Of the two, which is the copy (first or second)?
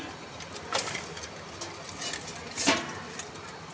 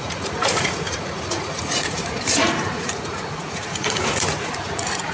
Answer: second